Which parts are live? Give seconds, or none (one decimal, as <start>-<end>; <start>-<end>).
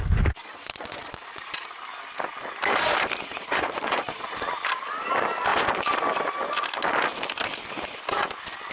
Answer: 0.0-0.4; 1.8-3.3; 4.3-8.7